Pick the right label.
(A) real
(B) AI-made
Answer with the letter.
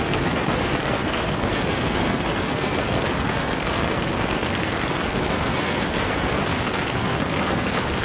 B